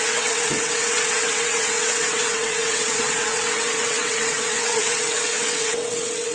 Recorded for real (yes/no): no